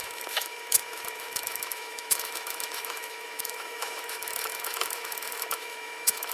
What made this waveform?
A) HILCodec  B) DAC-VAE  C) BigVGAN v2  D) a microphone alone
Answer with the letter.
B